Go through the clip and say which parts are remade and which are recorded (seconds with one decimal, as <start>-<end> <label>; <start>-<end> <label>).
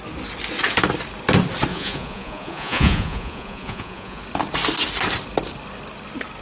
0.0-1.7 recorded; 1.7-4.2 remade; 4.2-6.4 recorded